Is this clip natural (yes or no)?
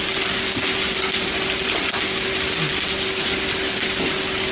yes